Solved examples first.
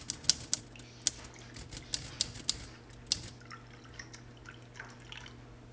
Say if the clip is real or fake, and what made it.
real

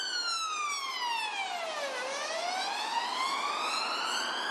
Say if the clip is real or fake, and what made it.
real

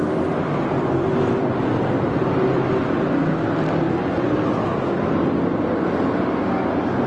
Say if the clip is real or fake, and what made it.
real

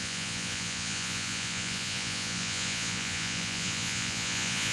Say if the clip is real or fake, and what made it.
fake, vocoder, Vocos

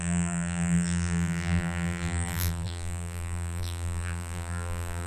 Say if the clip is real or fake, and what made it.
fake, vocoder, BigVGAN v2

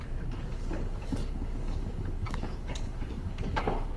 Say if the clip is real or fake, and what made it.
fake, codec, DAC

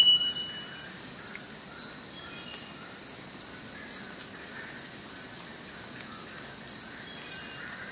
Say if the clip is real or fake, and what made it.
real